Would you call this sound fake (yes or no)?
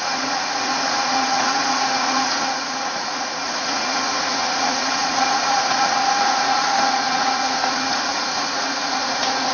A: yes